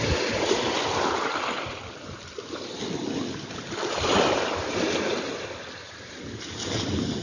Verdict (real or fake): real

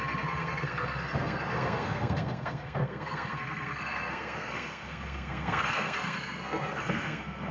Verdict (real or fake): fake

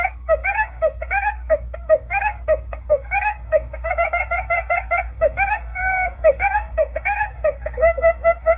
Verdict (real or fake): fake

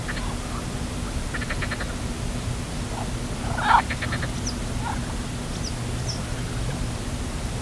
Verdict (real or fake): real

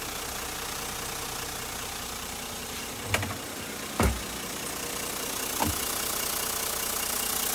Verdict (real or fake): real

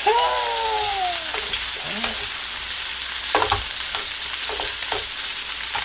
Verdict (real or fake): real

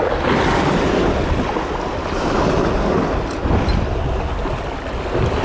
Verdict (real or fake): real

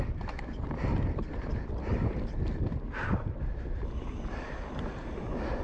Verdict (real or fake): real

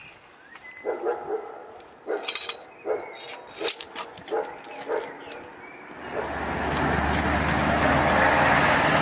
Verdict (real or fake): real